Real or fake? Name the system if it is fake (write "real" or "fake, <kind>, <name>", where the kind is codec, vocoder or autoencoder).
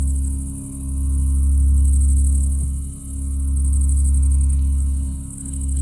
real